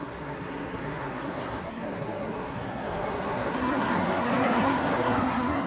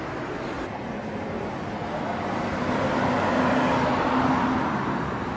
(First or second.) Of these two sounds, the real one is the second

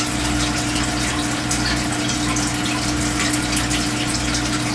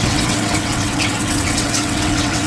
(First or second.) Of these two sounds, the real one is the first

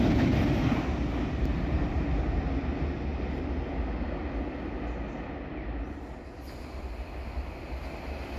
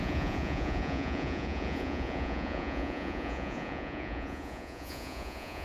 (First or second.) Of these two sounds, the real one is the first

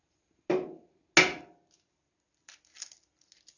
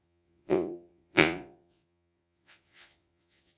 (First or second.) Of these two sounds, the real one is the first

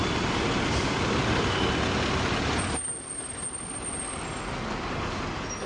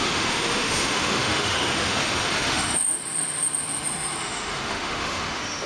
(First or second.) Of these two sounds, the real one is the first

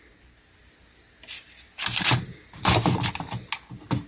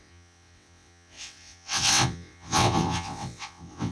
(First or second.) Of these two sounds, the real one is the first